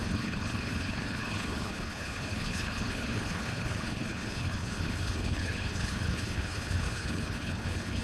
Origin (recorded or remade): remade